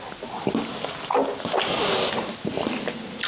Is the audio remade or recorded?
recorded